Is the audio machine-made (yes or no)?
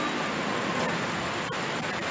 no